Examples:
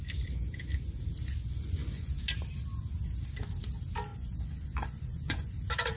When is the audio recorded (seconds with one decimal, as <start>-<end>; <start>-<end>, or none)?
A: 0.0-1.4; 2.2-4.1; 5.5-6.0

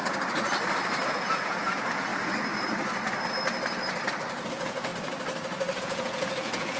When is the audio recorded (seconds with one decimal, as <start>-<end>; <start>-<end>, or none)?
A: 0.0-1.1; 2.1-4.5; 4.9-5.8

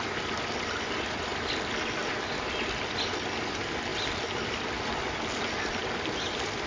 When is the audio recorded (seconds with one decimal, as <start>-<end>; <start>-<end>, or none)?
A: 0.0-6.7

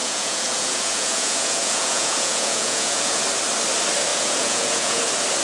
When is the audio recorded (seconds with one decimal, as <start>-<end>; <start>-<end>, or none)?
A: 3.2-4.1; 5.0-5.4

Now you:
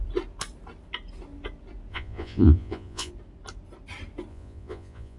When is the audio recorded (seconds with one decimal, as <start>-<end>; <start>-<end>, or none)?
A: 0.0-1.9; 3.1-4.3